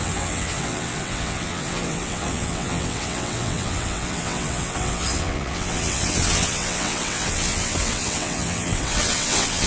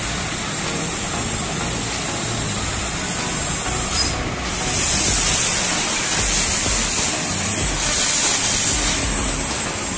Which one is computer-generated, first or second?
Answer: first